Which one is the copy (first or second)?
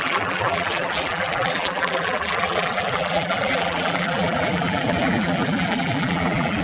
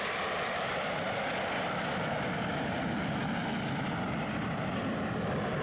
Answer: first